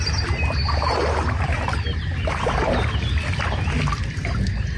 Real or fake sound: real